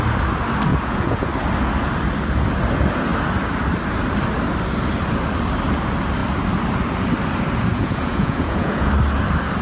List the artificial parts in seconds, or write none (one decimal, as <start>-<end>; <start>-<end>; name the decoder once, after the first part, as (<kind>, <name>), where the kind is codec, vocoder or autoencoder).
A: 0.7-1.3 (vocoder, Vocos); 7.7-8.9